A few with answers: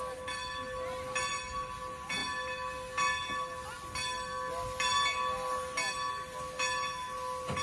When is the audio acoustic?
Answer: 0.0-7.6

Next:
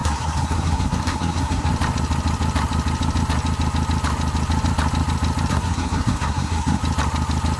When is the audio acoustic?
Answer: 1.7-5.5; 6.8-7.6

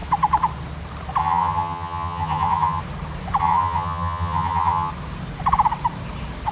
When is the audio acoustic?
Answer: 0.0-1.2; 2.8-3.4; 4.9-6.5